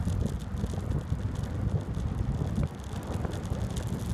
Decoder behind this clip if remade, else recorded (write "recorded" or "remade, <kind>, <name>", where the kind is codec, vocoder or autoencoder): recorded